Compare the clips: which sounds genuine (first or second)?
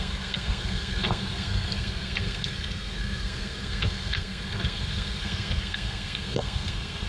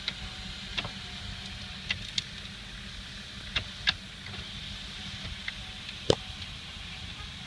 second